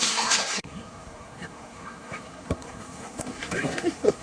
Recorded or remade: remade